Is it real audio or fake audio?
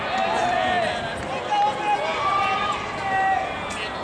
real